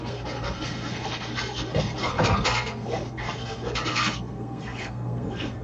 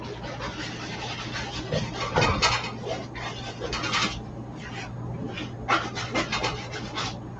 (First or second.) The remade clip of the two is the first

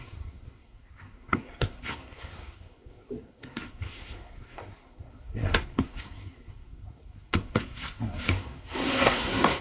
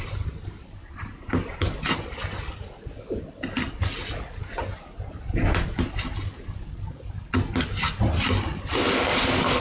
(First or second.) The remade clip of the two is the first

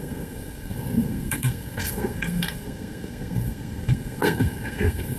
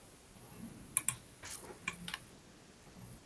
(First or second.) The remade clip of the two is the first